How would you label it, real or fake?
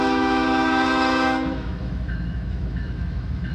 fake